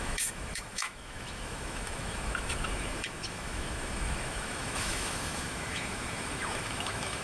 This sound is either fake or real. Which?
fake